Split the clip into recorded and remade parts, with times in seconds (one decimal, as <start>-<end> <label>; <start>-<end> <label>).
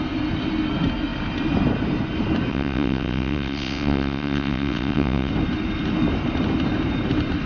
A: 0.0-2.5 recorded; 2.5-5.3 remade; 5.3-7.5 recorded